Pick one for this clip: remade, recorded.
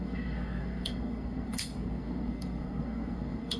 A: remade